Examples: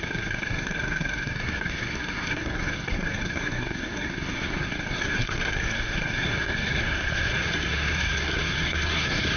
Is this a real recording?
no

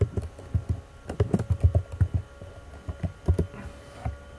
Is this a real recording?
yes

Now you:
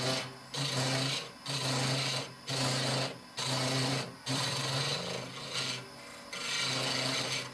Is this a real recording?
yes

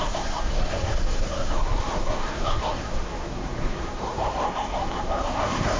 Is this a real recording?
no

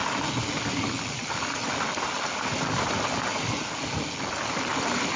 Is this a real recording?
yes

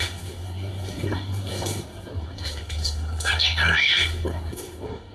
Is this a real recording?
no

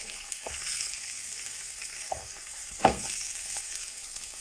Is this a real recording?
no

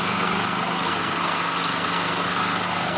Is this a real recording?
no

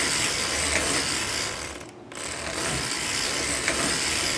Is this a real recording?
yes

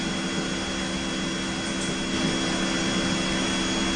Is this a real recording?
yes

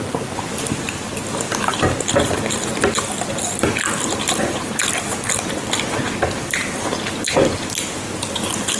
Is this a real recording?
yes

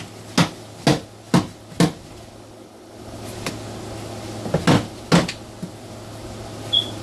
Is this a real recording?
yes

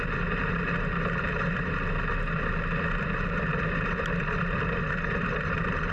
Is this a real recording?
yes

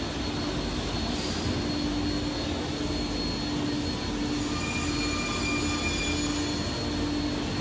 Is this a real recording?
yes